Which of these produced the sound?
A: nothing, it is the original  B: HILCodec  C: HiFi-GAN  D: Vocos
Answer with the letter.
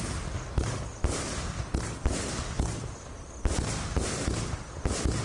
A